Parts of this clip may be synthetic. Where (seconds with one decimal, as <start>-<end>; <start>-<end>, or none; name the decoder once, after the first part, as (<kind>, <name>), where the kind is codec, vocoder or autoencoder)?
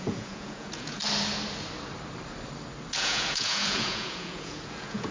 0.0-1.0 (vocoder, Vocos); 2.9-5.1